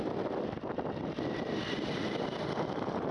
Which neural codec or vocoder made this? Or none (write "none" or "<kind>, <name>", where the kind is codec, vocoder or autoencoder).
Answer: none